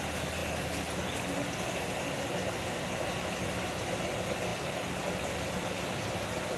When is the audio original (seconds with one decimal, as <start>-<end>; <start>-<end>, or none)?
0.0-6.6